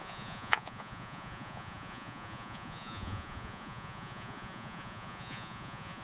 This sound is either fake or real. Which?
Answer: fake